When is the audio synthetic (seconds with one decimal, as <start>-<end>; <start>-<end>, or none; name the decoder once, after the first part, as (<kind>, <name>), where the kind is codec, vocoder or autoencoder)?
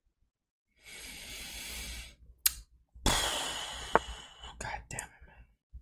none